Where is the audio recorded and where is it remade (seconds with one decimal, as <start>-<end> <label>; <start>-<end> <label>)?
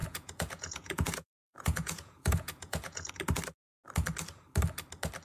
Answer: 0.0-3.1 remade; 3.1-5.2 recorded